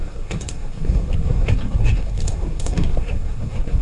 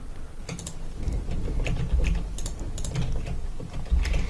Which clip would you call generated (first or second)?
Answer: first